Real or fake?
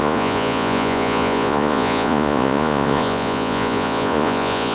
fake